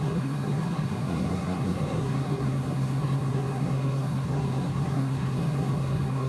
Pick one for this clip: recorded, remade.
remade